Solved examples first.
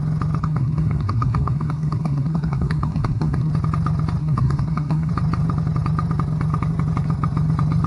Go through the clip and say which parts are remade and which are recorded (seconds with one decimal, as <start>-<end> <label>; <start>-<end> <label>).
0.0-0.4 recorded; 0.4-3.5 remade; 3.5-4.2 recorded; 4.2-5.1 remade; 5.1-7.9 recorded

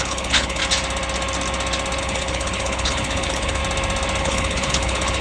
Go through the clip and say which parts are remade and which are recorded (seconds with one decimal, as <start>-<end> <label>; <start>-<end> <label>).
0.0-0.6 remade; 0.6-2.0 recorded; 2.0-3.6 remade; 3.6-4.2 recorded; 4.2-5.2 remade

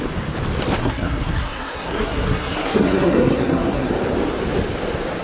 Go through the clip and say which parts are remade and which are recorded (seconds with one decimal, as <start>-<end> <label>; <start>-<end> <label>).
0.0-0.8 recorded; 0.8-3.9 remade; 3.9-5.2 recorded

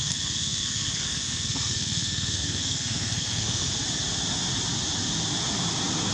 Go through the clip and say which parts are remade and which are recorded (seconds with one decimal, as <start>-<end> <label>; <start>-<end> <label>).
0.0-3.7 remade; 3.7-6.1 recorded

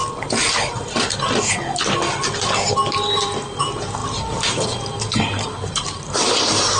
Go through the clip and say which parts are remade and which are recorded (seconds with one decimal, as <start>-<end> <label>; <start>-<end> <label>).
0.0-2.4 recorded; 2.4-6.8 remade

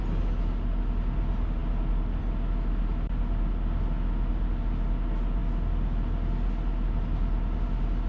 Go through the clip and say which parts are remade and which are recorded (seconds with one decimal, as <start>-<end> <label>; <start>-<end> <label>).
0.0-8.1 recorded